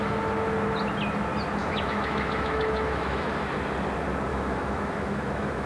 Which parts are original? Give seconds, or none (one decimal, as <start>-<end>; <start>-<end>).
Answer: 0.0-1.6; 3.3-4.3